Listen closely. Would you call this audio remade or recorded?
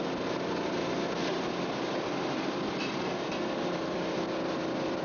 recorded